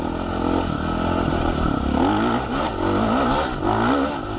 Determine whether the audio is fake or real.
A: real